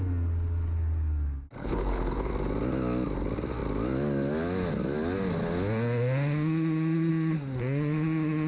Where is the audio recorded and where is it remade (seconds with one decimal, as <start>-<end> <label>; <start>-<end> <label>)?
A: 0.0-1.6 recorded; 1.6-2.3 remade; 2.3-8.5 recorded